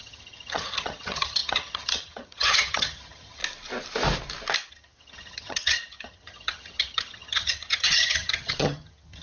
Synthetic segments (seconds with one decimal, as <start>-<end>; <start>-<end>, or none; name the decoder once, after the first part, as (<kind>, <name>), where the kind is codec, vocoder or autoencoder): 0.0-3.4 (vocoder, HiFi-GAN); 4.7-9.2